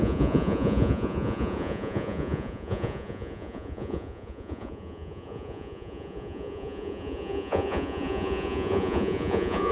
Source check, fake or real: fake